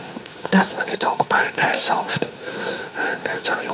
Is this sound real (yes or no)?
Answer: no